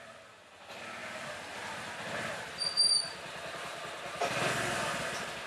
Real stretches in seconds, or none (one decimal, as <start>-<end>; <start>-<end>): 0.0-5.5